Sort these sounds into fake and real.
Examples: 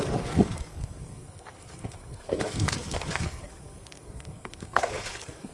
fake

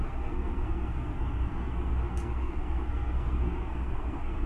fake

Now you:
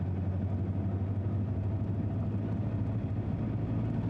real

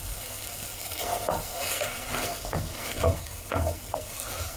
fake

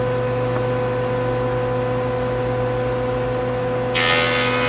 real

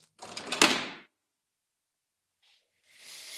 real